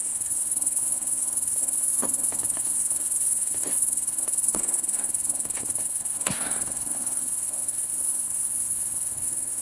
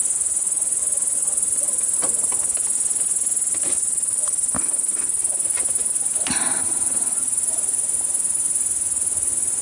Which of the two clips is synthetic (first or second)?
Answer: first